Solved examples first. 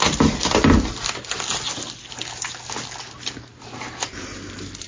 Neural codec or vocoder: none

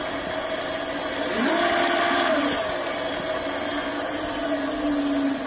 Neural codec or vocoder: none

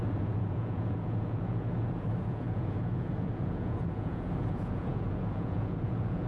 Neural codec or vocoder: vocoder, Vocos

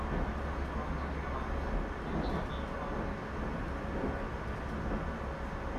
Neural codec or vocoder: none